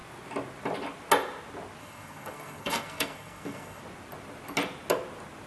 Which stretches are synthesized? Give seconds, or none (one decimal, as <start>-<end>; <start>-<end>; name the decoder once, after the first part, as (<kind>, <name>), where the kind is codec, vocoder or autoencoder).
1.8-3.8 (codec, SNAC)